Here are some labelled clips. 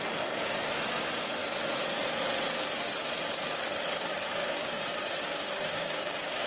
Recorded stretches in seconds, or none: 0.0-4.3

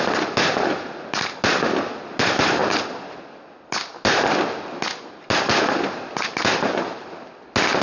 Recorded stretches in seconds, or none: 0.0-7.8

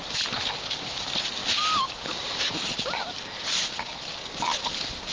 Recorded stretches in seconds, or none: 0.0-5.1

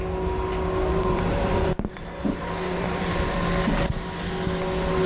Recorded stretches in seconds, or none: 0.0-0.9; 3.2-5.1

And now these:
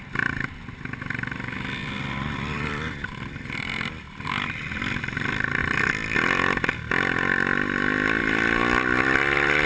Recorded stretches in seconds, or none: 0.0-1.8; 5.0-5.6; 7.2-8.2

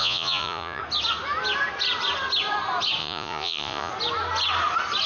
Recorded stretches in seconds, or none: 0.8-3.0; 3.9-5.1

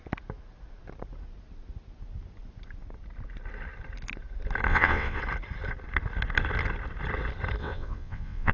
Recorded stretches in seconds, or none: 0.0-4.7; 5.2-7.6

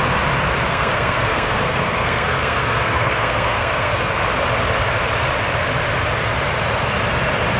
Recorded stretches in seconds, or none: 0.0-0.7; 4.1-7.6